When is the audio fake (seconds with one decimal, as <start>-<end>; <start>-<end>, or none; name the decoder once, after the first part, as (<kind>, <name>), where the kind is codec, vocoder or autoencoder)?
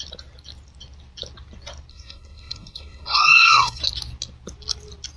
1.9-3.8 (codec, SNAC)